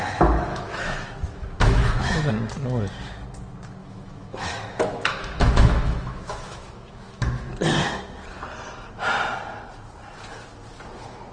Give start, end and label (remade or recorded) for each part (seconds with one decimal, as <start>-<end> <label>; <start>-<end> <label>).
0.0-0.5 recorded; 0.5-2.3 remade; 2.3-3.8 recorded; 3.8-7.5 remade; 7.5-11.3 recorded